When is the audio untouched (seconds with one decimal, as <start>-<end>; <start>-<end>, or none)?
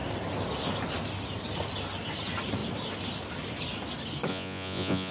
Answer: 0.0-4.3